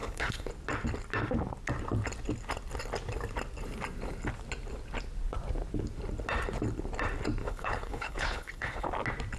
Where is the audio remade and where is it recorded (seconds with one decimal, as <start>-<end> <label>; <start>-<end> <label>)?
0.0-0.5 remade; 0.5-7.4 recorded; 7.4-8.9 remade; 8.9-9.4 recorded